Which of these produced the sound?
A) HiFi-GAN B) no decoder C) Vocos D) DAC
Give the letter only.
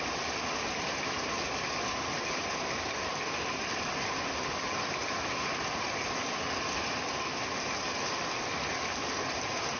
B